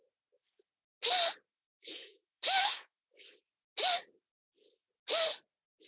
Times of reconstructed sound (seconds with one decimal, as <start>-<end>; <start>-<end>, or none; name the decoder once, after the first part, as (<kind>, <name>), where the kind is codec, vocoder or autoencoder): 1.5-3.2 (autoencoder, DAC-VAE)